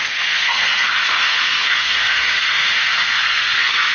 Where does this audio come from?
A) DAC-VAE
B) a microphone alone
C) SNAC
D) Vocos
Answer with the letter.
C